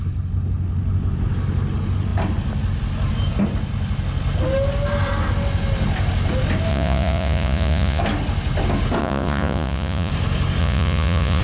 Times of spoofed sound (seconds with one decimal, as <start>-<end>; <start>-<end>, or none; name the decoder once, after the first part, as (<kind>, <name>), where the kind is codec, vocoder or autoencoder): 6.7-8.0 (vocoder, Vocos); 9.0-10.1; 10.6-11.4